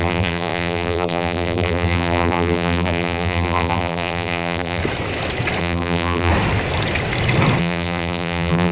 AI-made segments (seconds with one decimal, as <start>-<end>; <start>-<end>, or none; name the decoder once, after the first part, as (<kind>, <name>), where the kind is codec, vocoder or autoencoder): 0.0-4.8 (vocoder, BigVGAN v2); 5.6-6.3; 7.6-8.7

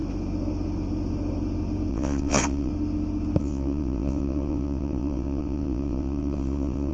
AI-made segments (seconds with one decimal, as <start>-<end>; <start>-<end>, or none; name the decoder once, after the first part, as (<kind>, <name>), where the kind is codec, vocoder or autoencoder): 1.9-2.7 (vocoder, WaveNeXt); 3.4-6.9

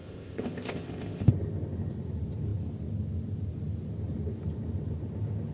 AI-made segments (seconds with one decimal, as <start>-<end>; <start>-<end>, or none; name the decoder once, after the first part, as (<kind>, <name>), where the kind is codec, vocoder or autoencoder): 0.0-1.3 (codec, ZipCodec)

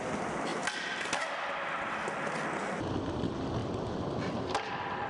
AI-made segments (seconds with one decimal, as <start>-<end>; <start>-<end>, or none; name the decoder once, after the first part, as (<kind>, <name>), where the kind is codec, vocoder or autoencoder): none

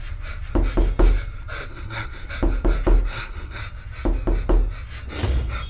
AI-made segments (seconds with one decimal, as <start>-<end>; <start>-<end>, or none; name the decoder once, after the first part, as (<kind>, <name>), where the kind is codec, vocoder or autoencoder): 1.7-2.3 (codec, SNAC); 3.1-3.6

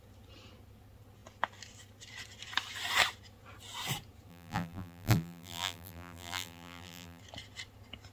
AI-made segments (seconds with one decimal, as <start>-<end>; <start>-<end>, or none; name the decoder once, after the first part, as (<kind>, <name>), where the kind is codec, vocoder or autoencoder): 4.3-7.2 (vocoder, BigVGAN v2)

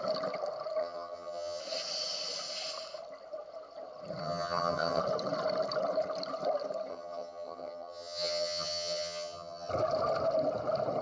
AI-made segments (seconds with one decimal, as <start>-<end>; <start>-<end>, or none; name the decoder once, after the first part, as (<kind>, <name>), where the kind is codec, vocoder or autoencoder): 0.8-1.6 (vocoder, HiFi-GAN); 4.2-5.0; 6.9-9.7

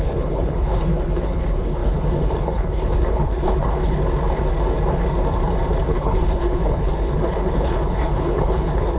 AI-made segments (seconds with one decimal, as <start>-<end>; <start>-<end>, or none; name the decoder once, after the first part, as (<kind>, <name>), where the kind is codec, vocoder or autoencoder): 0.0-4.0 (codec, HILCodec); 5.9-9.0